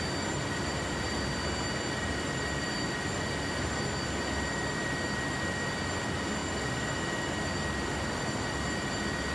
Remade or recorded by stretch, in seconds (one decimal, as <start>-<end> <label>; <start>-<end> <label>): 0.0-9.3 recorded